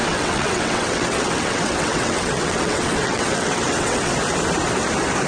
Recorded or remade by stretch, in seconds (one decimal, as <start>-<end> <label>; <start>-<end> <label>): 0.0-4.1 remade; 4.1-5.3 recorded